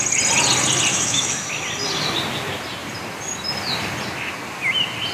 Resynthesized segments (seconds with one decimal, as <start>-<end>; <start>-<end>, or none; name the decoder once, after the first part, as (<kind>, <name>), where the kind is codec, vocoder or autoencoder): 0.9-1.5 (autoencoder, DAC-VAE)